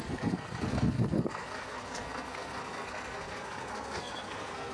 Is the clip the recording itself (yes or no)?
no